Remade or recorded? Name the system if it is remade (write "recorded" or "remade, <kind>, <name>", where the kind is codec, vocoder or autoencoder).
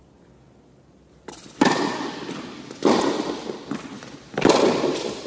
recorded